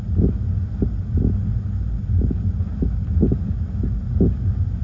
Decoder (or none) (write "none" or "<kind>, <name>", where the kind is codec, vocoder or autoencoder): none